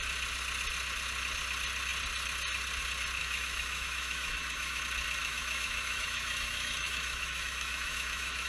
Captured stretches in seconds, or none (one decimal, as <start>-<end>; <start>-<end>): 0.0-3.2; 4.8-5.2